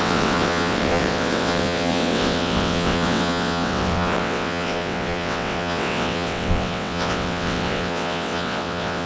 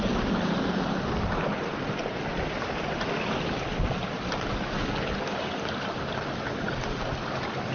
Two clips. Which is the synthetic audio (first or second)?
first